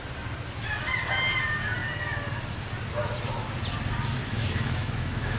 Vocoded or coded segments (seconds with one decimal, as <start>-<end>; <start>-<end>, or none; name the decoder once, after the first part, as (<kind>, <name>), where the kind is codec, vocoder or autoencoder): 4.2-5.4 (autoencoder, DAC-VAE)